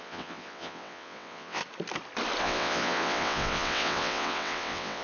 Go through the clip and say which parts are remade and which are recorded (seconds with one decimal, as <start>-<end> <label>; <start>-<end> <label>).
0.0-1.6 remade; 1.6-2.4 recorded; 2.4-5.0 remade